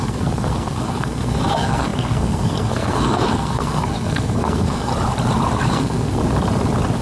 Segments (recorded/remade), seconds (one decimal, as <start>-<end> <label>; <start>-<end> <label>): 0.0-4.9 remade; 4.9-5.7 recorded; 5.7-6.2 remade; 6.2-7.0 recorded